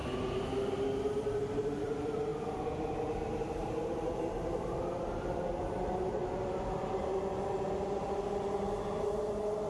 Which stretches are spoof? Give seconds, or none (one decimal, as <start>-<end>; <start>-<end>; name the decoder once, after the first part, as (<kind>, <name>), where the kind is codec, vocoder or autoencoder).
1.4-6.2 (vocoder, BigVGAN v2)